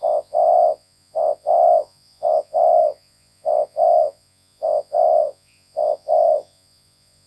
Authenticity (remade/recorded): remade